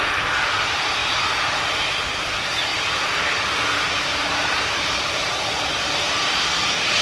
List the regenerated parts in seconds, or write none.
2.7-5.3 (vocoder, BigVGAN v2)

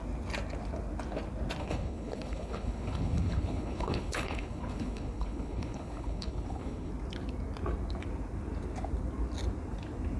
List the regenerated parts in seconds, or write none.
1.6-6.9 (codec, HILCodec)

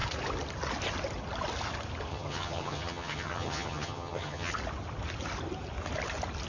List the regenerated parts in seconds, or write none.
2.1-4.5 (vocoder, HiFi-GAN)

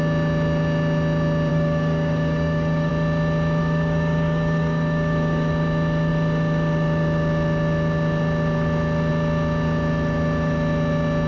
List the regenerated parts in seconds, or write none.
1.5-2.9 (codec, DAC); 3.6-5.5

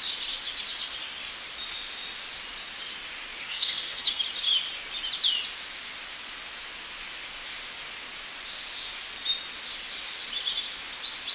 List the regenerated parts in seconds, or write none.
3.4-4.2 (codec, SNAC)

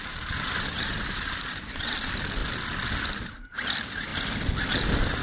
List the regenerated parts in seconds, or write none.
0.0-2.4 (vocoder, BigVGAN v2); 3.0-4.1; 4.7-5.2